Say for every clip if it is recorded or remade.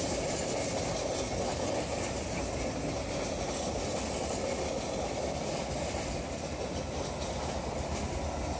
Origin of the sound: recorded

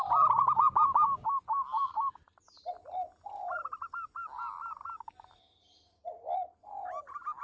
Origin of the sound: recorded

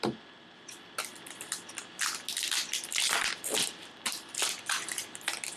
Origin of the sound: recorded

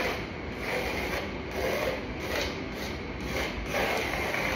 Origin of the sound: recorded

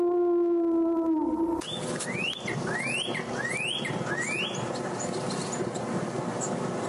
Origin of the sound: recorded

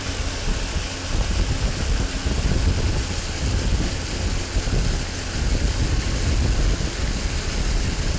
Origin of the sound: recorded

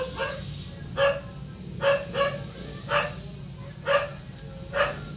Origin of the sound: recorded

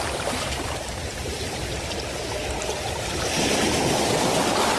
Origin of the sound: remade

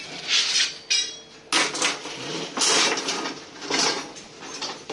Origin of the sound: recorded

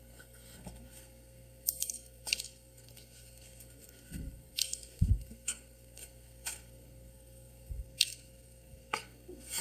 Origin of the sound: remade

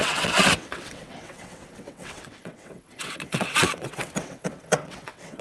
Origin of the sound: remade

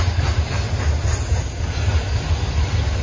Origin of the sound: recorded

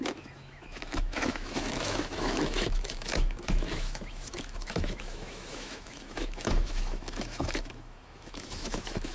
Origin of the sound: remade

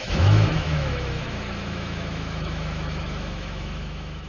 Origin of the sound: remade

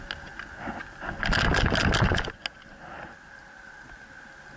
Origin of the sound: recorded